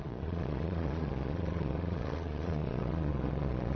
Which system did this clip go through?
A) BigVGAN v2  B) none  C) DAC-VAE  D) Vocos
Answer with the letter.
D